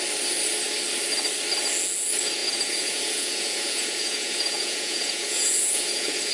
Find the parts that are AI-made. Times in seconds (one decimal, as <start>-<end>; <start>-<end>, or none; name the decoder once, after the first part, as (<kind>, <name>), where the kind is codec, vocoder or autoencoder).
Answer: 2.4-6.3 (vocoder, Vocos)